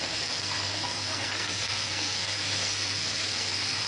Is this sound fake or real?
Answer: fake